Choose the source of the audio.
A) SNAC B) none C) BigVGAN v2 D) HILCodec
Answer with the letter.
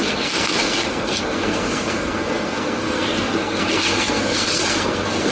A